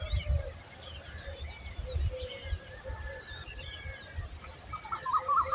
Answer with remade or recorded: recorded